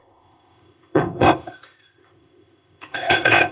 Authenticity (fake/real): fake